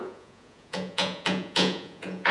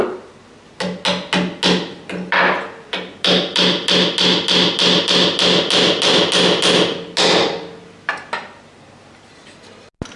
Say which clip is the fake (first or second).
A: first